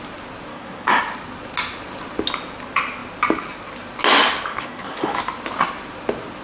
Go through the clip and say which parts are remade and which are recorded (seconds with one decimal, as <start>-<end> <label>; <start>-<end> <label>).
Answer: 0.0-0.5 recorded; 0.5-1.0 remade; 1.0-4.5 recorded; 4.5-5.2 remade; 5.2-6.4 recorded